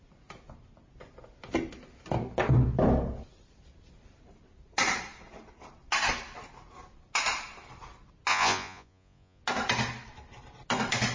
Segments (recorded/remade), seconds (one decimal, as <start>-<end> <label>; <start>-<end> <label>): 0.0-8.3 recorded; 8.3-9.4 remade; 9.4-11.1 recorded